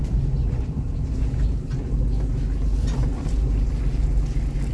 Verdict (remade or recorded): recorded